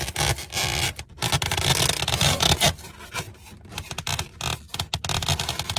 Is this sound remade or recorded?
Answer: recorded